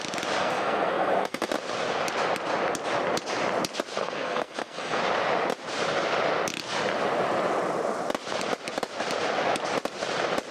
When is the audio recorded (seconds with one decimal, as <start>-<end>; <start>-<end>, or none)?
0.0-0.4; 1.5-4.0; 5.0-10.5